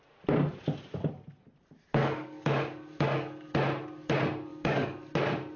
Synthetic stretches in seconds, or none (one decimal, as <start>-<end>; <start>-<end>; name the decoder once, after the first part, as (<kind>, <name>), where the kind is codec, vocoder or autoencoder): 1.9-3.5 (codec, DAC); 4.5-5.1